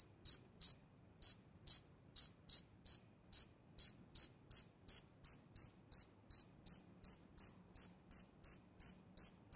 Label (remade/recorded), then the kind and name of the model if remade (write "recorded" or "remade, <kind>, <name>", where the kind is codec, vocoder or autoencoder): recorded